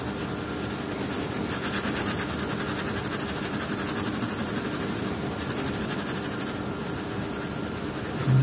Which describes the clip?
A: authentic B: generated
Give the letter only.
A